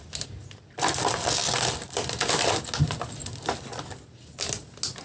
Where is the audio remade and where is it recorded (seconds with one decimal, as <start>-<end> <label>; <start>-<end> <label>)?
0.0-5.0 recorded